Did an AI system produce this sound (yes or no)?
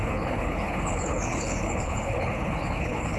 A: yes